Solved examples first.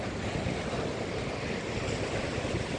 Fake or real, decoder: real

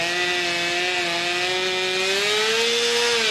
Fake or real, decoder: real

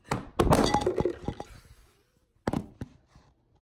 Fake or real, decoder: real